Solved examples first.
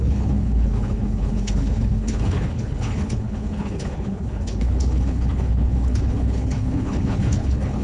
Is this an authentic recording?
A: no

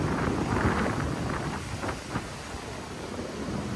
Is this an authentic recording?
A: yes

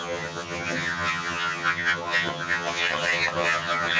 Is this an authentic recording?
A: no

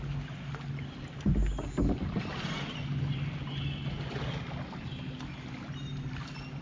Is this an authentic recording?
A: yes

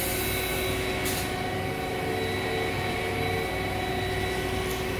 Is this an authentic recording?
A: yes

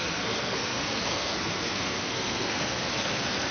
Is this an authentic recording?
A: no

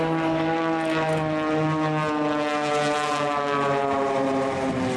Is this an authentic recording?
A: yes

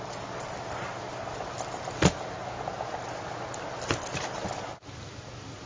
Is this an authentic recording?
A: yes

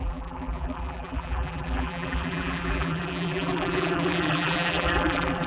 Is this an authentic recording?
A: no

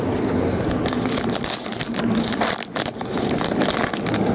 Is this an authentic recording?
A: yes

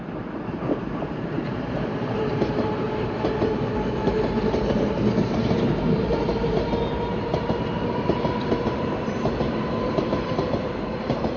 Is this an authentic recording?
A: no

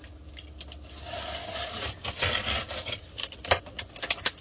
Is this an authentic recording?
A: yes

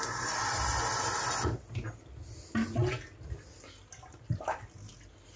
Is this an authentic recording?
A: yes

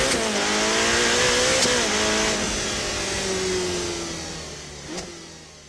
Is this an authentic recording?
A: yes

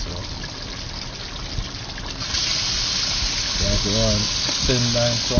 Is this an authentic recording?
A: yes